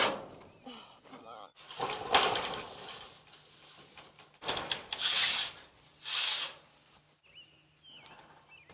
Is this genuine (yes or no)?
yes